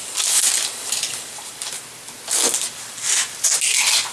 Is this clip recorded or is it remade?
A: recorded